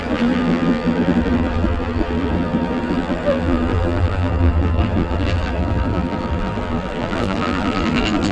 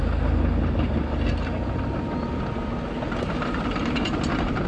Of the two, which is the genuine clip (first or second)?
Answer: second